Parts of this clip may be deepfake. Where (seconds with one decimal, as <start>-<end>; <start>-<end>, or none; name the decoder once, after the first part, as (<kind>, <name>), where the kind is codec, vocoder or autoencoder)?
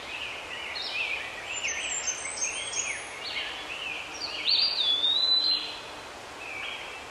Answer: none